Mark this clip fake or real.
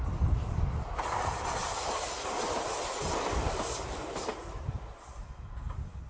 real